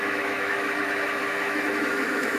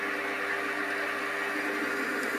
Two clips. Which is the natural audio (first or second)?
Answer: second